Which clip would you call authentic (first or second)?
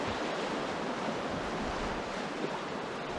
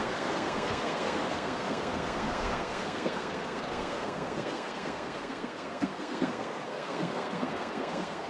first